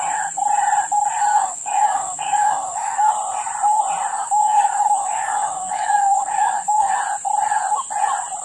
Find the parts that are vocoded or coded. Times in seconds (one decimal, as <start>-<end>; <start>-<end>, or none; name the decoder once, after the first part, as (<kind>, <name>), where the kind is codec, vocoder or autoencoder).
1.3-3.1 (codec, DAC); 4.1-6.9